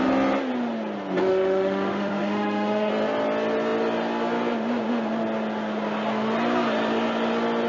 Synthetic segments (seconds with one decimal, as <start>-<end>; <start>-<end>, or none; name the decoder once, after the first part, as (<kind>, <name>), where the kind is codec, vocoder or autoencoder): 1.3-2.9 (autoencoder, DAC-VAE)